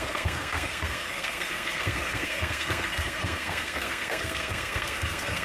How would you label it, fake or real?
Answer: fake